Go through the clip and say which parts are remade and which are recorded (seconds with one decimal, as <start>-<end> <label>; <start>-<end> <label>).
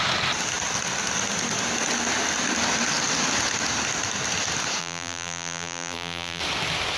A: 0.0-4.8 recorded; 4.8-6.4 remade; 6.4-7.0 recorded